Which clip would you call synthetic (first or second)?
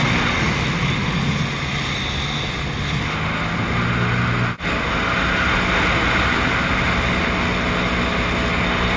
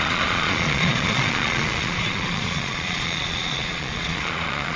second